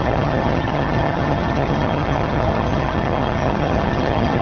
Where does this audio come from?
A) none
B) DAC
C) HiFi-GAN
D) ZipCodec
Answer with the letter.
C